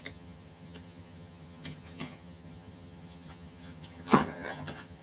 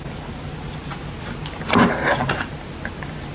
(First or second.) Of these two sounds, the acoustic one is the second